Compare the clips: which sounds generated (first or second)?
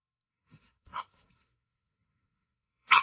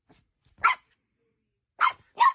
first